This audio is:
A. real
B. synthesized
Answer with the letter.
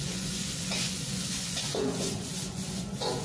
B